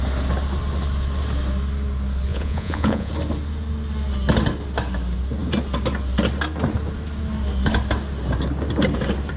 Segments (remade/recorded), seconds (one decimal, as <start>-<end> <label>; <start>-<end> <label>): 0.0-2.3 recorded; 2.3-3.1 remade; 3.1-9.4 recorded